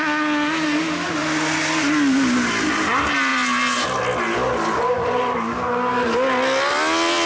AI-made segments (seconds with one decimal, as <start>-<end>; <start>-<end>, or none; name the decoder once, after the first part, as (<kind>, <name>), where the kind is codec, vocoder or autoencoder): none